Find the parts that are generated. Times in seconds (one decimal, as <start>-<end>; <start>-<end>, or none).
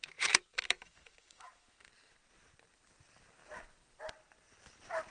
0.0-1.9